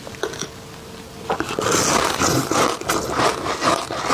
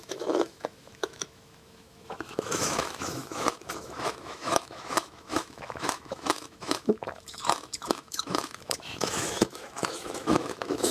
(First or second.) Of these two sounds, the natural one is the first